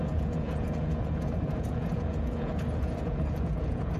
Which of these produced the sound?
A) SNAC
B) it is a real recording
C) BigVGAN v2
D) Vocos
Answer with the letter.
D